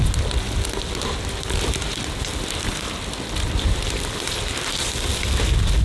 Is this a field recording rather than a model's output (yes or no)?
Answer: yes